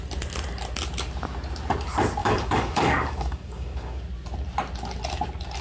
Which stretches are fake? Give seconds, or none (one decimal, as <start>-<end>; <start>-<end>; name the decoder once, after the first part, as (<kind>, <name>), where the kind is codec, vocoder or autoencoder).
2.2-4.0 (codec, DAC)